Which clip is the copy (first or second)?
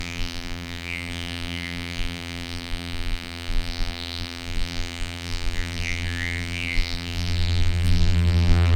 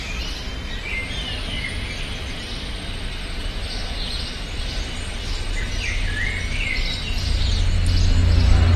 first